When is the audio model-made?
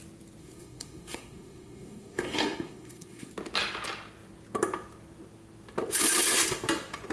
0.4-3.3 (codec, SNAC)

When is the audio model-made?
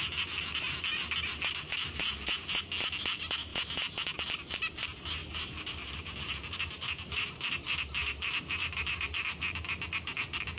none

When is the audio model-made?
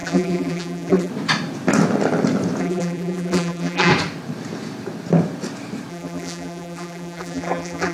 0.0-1.1 (vocoder, BigVGAN v2); 2.6-3.9; 5.9-7.9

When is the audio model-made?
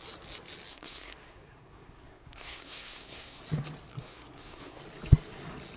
0.7-3.4 (codec, SNAC); 3.9-4.8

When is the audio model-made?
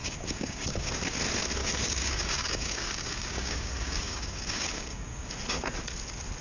0.0-0.9 (codec, DAC); 1.6-5.3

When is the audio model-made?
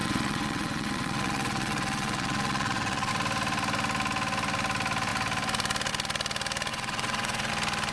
0.0-3.1 (vocoder, WaveNeXt); 6.7-7.5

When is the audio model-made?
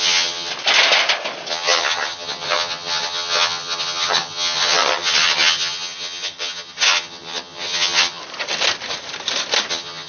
0.0-0.5 (vocoder, HiFi-GAN); 1.5-8.2; 9.7-10.1